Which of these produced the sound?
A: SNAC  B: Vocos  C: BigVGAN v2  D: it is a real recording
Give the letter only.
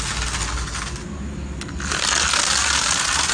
D